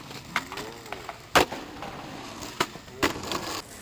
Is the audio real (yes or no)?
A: yes